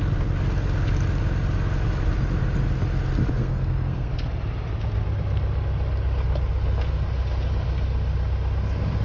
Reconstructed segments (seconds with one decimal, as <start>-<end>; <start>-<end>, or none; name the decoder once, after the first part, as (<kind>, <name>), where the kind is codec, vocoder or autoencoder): 3.4-4.1 (codec, SNAC)